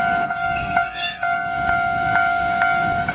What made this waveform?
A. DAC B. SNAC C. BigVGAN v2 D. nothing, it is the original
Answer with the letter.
A